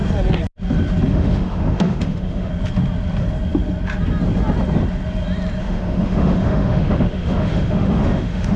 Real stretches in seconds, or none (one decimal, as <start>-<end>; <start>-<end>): 0.0-1.1; 2.5-5.6